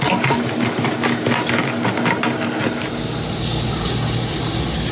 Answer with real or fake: real